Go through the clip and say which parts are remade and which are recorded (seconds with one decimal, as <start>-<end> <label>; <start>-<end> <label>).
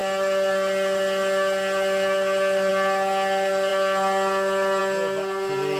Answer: 0.0-5.8 recorded